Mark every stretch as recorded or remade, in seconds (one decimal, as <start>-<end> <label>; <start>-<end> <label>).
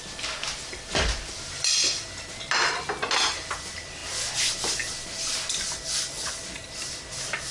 0.0-7.5 recorded